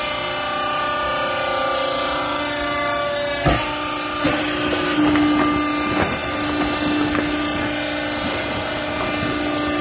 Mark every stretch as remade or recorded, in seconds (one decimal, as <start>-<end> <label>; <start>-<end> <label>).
0.0-9.8 recorded

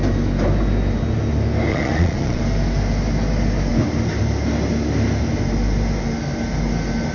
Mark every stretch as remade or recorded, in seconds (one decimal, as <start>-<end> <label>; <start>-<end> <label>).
0.0-1.7 recorded; 1.7-2.4 remade; 2.4-7.1 recorded

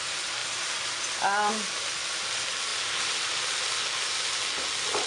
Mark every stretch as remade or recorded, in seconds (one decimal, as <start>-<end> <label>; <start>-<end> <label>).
0.0-5.1 recorded

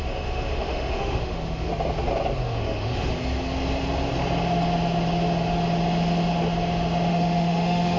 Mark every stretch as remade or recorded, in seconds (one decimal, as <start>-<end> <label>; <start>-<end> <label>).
0.0-1.7 remade; 1.7-2.4 recorded; 2.4-3.1 remade; 3.1-7.1 recorded; 7.1-8.0 remade

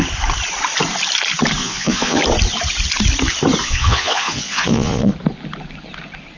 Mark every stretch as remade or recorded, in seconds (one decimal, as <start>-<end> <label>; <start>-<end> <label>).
0.0-1.6 recorded; 1.6-2.2 remade; 2.2-3.6 recorded; 3.6-5.1 remade; 5.1-6.4 recorded

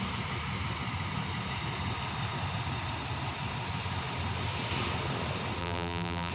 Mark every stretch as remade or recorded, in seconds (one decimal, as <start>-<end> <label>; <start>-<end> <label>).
0.0-5.6 recorded; 5.6-6.3 remade